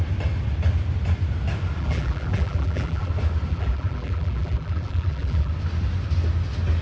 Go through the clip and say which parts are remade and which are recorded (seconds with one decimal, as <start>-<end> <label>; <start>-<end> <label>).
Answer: 0.0-1.8 recorded; 1.8-3.1 remade; 3.1-3.5 recorded; 3.5-5.5 remade; 5.5-6.8 recorded

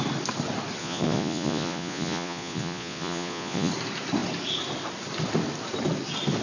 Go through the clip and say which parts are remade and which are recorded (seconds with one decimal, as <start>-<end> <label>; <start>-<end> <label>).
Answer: 0.0-0.8 recorded; 0.8-3.7 remade; 3.7-6.4 recorded

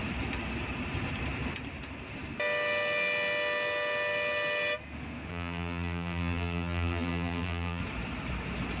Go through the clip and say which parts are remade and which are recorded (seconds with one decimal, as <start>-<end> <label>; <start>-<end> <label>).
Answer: 0.0-5.3 recorded; 5.3-7.8 remade; 7.8-8.8 recorded

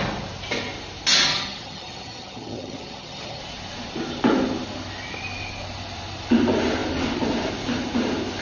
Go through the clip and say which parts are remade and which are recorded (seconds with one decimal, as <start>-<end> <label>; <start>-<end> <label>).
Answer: 0.0-1.3 recorded; 1.3-3.4 remade; 3.4-8.4 recorded

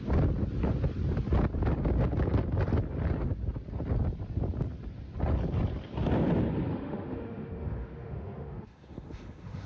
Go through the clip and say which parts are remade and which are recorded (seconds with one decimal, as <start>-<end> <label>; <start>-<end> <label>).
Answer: 0.0-6.7 recorded; 6.7-9.7 remade

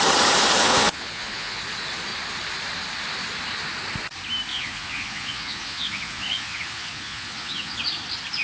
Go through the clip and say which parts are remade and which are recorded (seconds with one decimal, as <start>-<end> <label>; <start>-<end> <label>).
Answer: 0.0-0.6 recorded; 0.6-1.6 remade; 1.6-4.5 recorded; 4.5-7.8 remade; 7.8-8.4 recorded